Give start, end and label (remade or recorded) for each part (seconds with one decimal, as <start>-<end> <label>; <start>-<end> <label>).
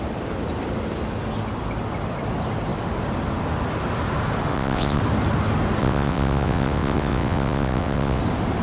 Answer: 0.0-4.5 recorded; 4.5-5.0 remade; 5.0-5.8 recorded; 5.8-8.2 remade; 8.2-8.6 recorded